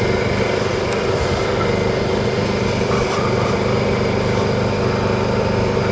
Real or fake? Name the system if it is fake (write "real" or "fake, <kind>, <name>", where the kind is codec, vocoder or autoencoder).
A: real